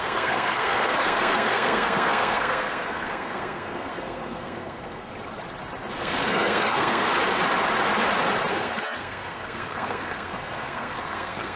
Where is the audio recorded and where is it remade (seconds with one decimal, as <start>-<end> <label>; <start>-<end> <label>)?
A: 0.0-5.1 remade; 5.1-6.0 recorded; 6.0-7.1 remade; 7.1-8.5 recorded; 8.5-11.6 remade